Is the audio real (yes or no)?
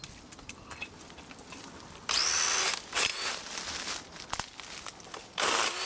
yes